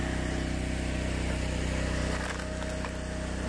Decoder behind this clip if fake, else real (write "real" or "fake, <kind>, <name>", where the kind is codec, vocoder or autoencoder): real